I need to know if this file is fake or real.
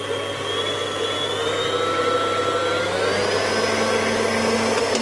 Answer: real